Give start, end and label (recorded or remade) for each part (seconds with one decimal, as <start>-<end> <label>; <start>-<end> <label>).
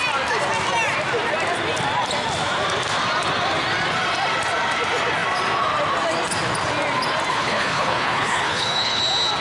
0.0-7.3 recorded; 7.3-9.0 remade; 9.0-9.4 recorded